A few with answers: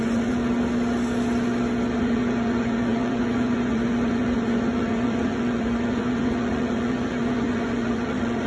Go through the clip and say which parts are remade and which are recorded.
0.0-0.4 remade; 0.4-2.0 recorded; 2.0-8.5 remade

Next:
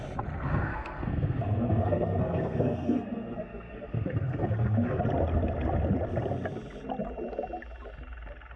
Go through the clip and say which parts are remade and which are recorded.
0.0-0.5 recorded; 0.5-5.0 remade; 5.0-8.6 recorded

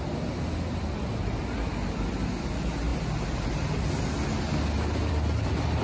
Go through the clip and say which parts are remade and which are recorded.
0.0-5.8 recorded

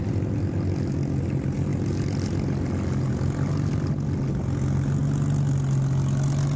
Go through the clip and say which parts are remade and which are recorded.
0.0-6.6 recorded

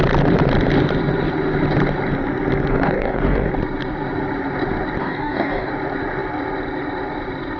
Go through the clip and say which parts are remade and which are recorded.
0.0-2.7 recorded; 2.7-3.5 remade; 3.5-5.0 recorded; 5.0-5.7 remade; 5.7-7.6 recorded

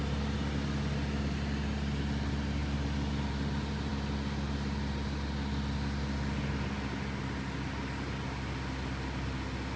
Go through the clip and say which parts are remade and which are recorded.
0.0-9.8 recorded

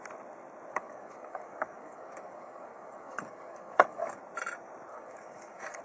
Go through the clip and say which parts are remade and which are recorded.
0.0-0.7 recorded; 0.7-4.2 remade; 4.2-4.9 recorded; 4.9-5.8 remade

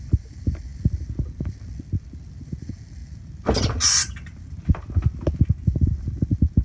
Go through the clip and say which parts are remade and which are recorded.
0.0-6.6 recorded